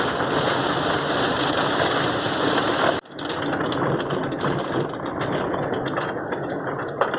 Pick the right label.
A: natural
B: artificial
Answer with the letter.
A